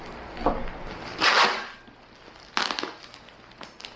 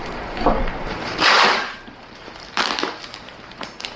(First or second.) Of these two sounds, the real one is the first